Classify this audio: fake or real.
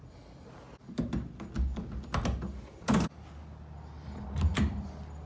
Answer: real